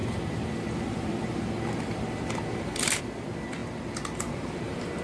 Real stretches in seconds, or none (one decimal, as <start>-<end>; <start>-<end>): 3.6-4.3